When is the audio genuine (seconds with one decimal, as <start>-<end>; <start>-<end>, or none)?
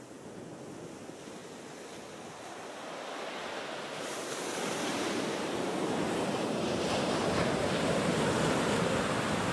0.0-4.9; 8.1-9.5